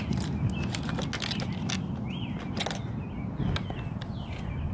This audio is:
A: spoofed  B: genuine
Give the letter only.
B